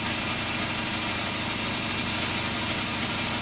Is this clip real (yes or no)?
yes